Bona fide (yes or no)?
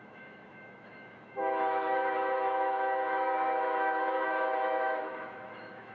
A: no